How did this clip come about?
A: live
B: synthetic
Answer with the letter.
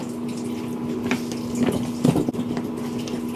A